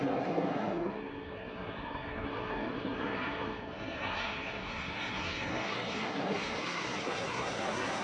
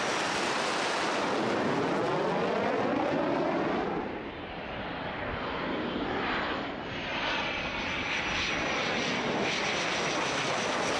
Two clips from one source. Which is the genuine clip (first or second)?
second